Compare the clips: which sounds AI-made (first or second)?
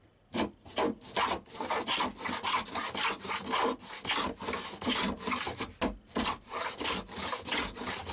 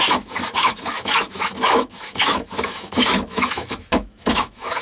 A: second